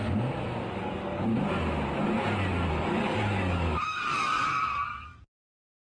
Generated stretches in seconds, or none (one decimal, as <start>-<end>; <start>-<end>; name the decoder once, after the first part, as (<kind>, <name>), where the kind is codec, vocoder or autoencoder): 0.7-1.3 (codec, DAC); 2.7-5.9